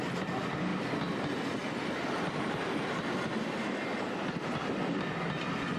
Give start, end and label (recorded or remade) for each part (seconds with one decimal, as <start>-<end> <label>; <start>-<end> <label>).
0.0-5.8 recorded